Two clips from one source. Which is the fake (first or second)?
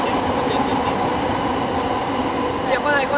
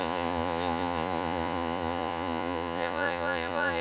second